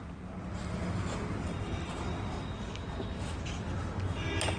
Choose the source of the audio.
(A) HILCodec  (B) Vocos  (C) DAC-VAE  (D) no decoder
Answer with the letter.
D